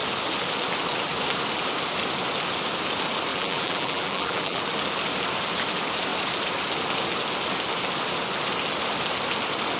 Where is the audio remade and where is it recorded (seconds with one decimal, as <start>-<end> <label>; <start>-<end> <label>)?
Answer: 0.0-3.3 recorded; 3.3-4.6 remade; 4.6-9.8 recorded